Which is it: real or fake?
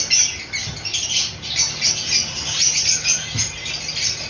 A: real